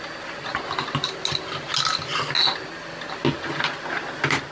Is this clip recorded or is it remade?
recorded